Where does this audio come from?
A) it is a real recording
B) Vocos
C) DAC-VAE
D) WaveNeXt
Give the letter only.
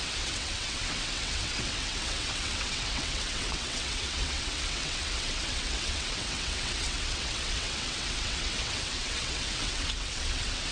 D